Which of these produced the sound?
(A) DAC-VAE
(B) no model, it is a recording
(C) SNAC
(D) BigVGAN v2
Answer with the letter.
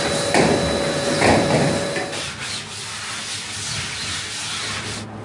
B